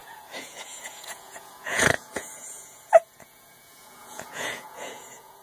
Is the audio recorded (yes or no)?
no